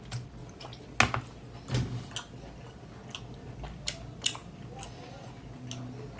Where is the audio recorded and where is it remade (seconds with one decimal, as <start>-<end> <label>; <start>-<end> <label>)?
0.0-6.2 recorded